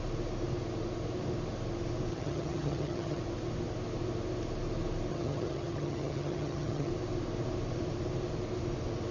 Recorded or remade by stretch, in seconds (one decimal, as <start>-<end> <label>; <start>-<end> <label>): 0.0-2.1 recorded; 2.1-3.2 remade; 3.2-5.1 recorded; 5.1-6.9 remade; 6.9-9.1 recorded